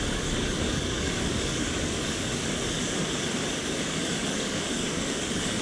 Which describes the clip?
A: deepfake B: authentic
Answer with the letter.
A